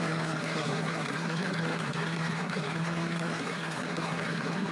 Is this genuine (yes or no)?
no